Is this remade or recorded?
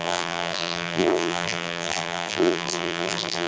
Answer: remade